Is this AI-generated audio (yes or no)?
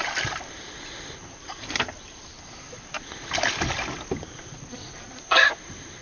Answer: yes